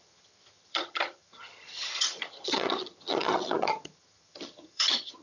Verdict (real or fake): fake